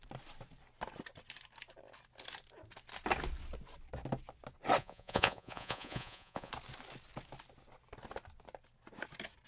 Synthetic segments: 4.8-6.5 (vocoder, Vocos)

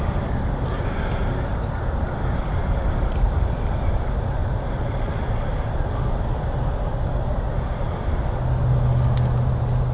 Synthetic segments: 2.6-5.9 (vocoder, BigVGAN v2)

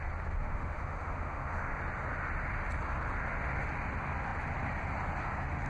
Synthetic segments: 0.4-1.8 (autoencoder, DAC-VAE)

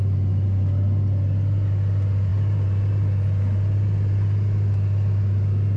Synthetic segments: none

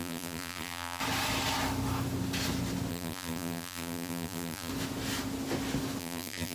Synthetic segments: 0.0-1.0 (vocoder, BigVGAN v2); 2.9-4.7; 6.0-6.5

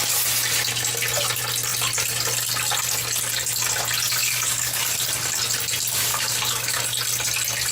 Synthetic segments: 4.2-4.8 (codec, DAC); 6.1-6.8

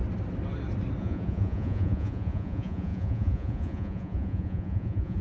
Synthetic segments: 1.0-5.2 (vocoder, Vocos)

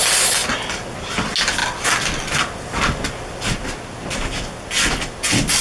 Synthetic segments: none